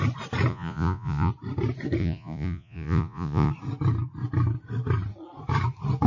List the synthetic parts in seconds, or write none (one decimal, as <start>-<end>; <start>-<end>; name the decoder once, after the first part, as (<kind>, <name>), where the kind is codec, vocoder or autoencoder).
0.5-1.3 (vocoder, Vocos); 2.0-3.5